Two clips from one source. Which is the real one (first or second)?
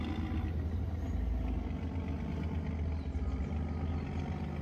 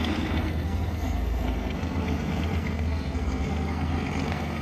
first